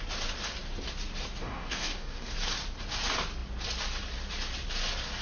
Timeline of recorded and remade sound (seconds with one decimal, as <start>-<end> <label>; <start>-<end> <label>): 0.0-1.4 recorded; 1.4-2.3 remade; 2.3-5.2 recorded